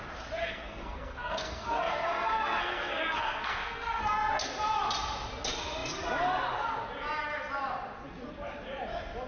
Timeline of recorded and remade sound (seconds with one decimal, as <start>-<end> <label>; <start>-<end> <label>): 0.0-0.4 recorded; 0.4-4.0 remade; 4.0-9.3 recorded